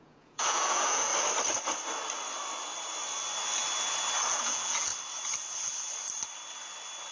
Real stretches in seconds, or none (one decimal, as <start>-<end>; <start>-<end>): 1.1-4.3; 4.9-7.1